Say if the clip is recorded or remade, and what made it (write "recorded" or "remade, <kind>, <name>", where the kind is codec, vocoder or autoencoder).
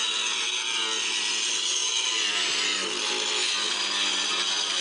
recorded